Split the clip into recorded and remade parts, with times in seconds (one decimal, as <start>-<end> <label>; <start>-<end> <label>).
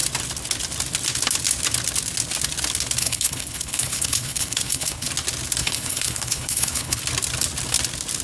0.0-3.0 recorded; 3.0-5.1 remade; 5.1-5.6 recorded; 5.6-7.0 remade; 7.0-8.2 recorded